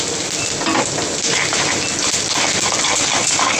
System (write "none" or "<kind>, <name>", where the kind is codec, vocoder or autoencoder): none